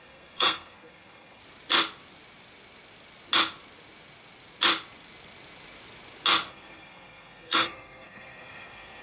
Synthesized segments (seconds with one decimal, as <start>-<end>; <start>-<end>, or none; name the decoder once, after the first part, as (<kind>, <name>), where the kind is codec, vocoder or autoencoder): 0.0-1.4 (codec, SNAC); 6.5-9.0